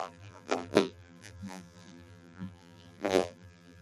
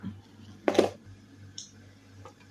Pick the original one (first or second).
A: second